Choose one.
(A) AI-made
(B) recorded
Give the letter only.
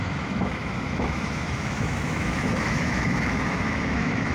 A